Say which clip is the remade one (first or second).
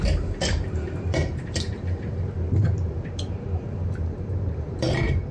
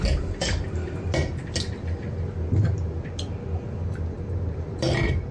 first